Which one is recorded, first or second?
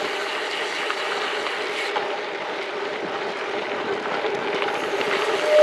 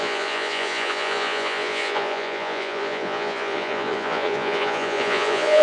first